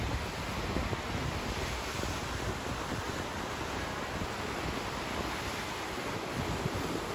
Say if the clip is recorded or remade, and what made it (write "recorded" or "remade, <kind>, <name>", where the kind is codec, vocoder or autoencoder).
recorded